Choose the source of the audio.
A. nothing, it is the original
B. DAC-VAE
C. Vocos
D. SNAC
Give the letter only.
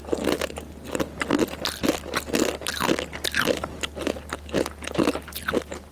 A